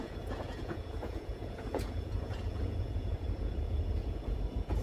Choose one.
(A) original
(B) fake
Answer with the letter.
B